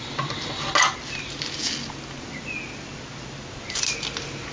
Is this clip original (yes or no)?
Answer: yes